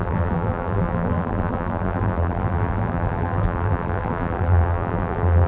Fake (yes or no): yes